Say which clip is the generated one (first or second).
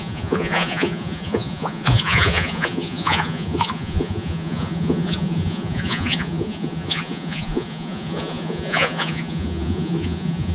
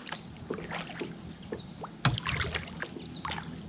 first